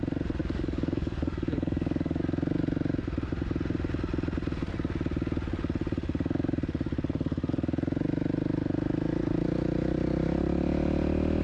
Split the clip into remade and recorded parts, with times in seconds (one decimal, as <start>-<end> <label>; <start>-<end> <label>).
0.0-0.4 recorded; 0.4-2.2 remade; 2.2-11.4 recorded